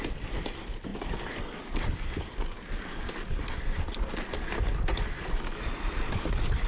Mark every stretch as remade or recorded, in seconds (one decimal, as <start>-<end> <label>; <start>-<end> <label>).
0.0-6.7 recorded